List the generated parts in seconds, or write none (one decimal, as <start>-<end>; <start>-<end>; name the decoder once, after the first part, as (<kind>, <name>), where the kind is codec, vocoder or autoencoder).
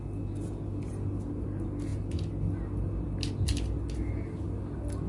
none